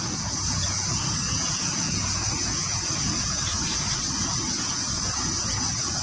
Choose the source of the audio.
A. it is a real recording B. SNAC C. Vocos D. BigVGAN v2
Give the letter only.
C